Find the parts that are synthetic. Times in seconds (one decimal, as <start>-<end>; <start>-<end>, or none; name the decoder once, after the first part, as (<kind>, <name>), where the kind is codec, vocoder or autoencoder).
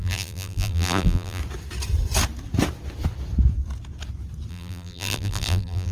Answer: 0.0-1.4 (vocoder, BigVGAN v2); 4.5-5.9